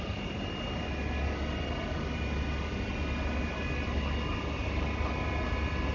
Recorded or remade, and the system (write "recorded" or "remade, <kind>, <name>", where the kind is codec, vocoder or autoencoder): recorded